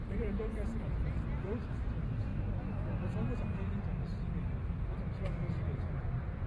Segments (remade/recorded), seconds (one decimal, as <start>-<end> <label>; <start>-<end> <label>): 0.0-2.3 remade; 2.3-5.6 recorded; 5.6-6.5 remade